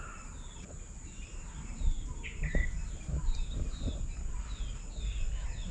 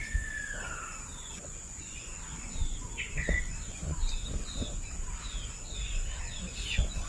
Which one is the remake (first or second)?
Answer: second